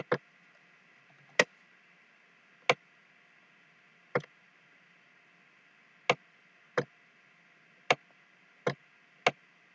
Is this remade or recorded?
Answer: recorded